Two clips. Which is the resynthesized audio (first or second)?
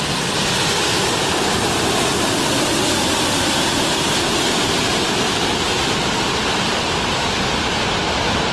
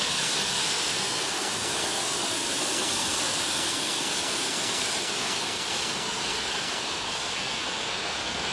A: second